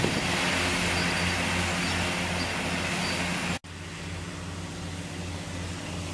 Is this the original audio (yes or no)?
yes